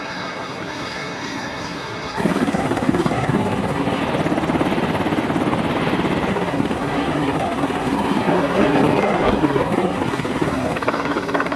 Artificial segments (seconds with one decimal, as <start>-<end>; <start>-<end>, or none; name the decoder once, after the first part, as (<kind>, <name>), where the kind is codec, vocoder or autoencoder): 0.0-4.0 (codec, SNAC); 6.3-11.6